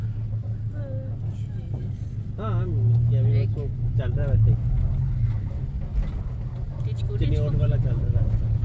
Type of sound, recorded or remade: recorded